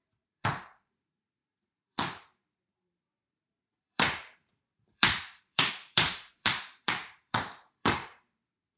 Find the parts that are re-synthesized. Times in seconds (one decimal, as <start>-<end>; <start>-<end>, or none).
0.0-8.8